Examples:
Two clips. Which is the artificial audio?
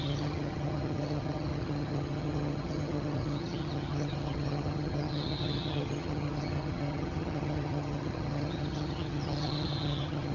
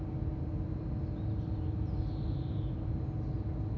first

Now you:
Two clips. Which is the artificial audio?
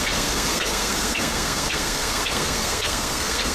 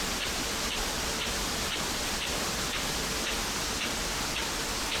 first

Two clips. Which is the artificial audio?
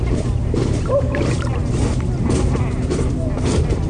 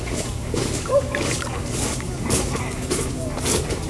second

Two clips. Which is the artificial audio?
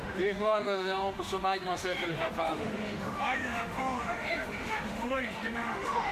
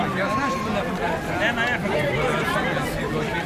first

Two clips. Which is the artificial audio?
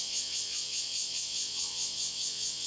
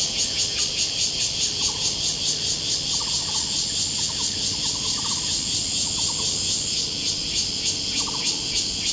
first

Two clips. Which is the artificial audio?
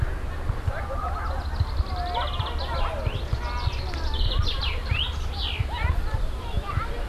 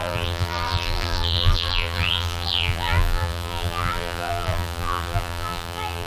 second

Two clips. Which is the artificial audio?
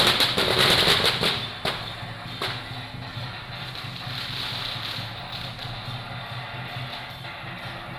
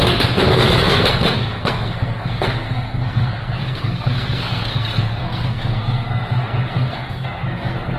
second